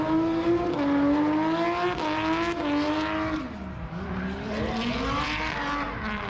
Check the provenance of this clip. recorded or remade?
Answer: recorded